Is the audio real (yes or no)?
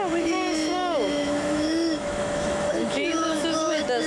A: no